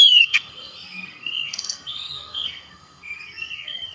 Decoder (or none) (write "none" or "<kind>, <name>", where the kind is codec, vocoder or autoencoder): codec, SNAC